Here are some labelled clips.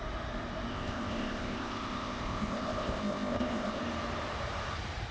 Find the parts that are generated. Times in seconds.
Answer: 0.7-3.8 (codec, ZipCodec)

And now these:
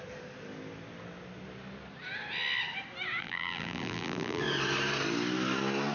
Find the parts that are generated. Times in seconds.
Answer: 3.2-4.4 (vocoder, BigVGAN v2)

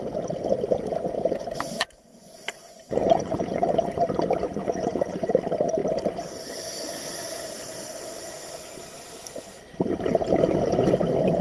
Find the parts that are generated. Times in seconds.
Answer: 2.1-4.0 (vocoder, Vocos); 4.6-5.3

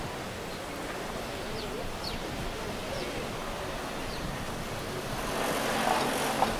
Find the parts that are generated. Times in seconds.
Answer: none

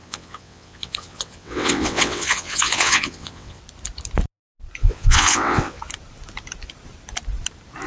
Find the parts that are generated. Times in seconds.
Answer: 0.0-3.6 (vocoder, WaveNeXt); 4.8-5.8

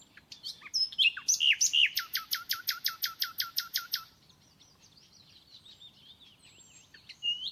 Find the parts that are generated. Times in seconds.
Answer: 0.0-0.6 (vocoder, BigVGAN v2); 3.6-7.5